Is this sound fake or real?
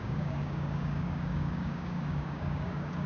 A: fake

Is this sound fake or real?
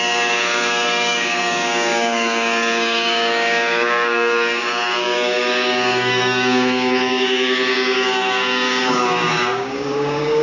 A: fake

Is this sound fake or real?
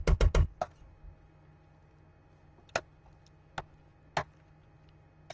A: real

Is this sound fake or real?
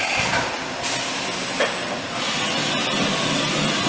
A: real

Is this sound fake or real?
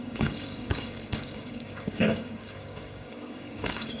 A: fake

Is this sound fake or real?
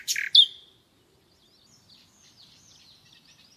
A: real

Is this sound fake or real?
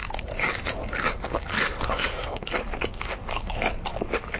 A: fake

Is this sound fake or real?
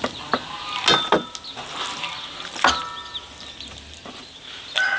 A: real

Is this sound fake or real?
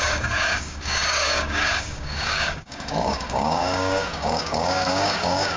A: fake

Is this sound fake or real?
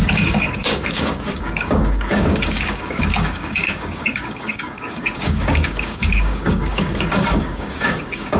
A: fake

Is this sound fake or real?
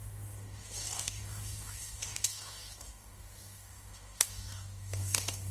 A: fake